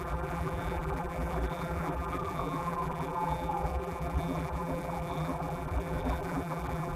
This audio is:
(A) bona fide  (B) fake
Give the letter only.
B